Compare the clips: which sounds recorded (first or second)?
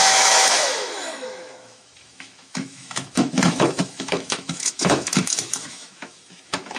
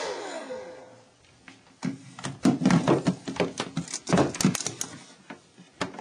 second